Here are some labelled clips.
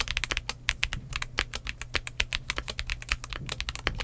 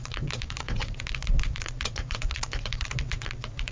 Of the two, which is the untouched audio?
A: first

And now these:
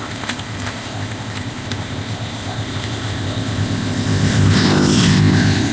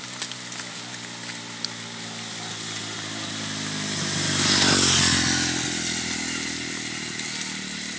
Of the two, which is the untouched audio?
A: second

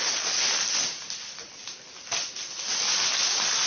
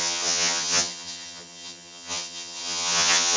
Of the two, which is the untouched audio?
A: first